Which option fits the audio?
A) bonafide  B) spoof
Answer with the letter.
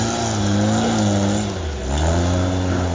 A